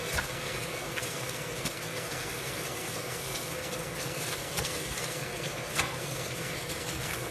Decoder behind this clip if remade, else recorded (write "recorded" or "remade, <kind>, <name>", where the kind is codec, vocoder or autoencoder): remade, codec, SNAC